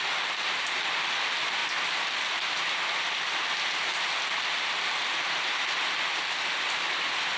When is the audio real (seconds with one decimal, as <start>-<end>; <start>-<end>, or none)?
0.0-7.4